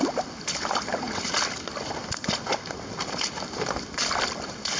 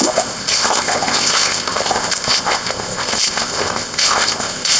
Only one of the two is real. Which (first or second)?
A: first